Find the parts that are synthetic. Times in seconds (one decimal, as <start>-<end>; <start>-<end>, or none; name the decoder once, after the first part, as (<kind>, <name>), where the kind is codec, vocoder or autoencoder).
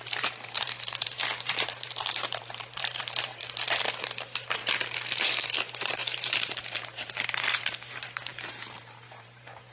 0.0-3.4 (vocoder, BigVGAN v2); 4.0-4.6; 5.2-9.7